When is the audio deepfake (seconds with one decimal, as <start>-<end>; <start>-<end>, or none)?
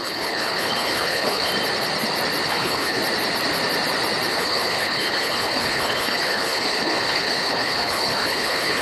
0.0-1.5; 2.5-3.0; 4.3-8.8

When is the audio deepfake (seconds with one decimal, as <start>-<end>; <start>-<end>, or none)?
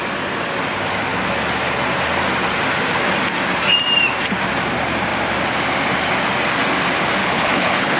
7.2-8.0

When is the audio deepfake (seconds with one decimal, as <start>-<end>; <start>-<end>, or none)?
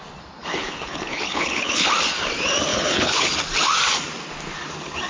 0.4-1.9; 2.7-3.3